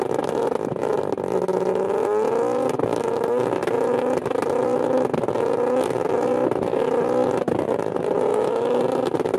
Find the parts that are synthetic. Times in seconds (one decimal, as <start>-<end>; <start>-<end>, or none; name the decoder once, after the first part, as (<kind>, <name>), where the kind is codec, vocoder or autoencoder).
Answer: 8.3-8.8 (autoencoder, DAC-VAE)

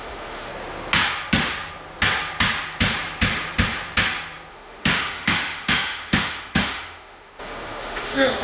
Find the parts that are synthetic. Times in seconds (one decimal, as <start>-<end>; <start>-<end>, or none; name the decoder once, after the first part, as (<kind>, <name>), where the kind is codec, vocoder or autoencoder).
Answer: 0.0-0.5 (autoencoder, DAC-VAE); 4.5-8.4

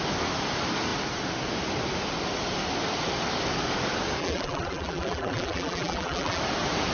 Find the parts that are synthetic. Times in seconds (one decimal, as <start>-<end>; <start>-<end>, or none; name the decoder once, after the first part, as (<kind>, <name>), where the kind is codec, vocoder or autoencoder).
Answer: 4.2-6.4 (vocoder, BigVGAN v2)

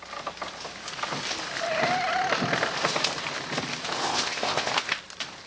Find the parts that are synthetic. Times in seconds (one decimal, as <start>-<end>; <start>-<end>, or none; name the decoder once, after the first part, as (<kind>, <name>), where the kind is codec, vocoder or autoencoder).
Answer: 4.0-4.7 (codec, ZipCodec)

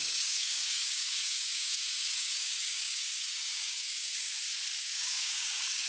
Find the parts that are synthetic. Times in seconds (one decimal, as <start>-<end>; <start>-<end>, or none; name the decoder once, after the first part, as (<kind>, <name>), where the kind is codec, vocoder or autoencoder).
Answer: 0.0-4.1 (codec, DAC); 4.8-5.9

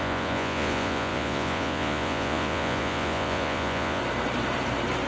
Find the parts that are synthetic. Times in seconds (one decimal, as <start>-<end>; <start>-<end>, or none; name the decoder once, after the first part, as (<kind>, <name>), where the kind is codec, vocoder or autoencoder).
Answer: 0.0-4.0 (vocoder, Vocos)

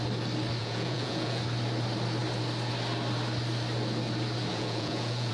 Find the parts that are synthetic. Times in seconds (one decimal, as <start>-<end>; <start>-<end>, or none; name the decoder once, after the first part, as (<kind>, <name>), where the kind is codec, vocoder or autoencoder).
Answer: 0.6-1.4 (vocoder, Vocos); 4.5-5.3

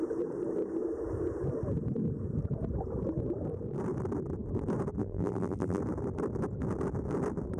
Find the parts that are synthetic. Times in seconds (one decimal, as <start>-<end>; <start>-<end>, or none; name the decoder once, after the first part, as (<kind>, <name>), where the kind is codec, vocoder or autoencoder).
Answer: 5.0-5.8 (vocoder, BigVGAN v2)